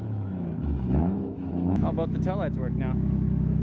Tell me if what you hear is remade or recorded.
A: remade